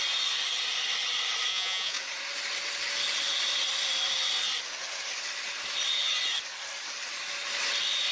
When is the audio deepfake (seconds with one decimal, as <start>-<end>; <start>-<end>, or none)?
1.5-2.0